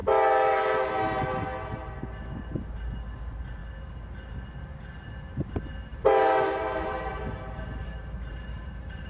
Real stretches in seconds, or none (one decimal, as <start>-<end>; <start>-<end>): 0.0-5.9